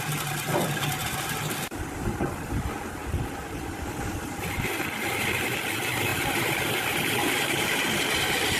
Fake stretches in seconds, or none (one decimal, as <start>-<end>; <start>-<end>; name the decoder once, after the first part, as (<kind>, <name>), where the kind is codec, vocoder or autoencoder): 3.0-4.7 (vocoder, BigVGAN v2); 6.1-8.6